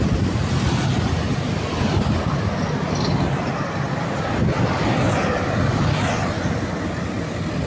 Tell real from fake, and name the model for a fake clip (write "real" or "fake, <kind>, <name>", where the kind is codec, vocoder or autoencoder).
real